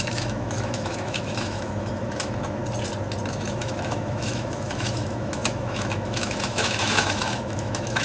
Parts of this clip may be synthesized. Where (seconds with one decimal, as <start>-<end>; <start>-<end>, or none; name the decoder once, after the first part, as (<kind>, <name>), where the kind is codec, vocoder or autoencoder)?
0.0-2.6 (autoencoder, DAC-VAE); 3.3-8.0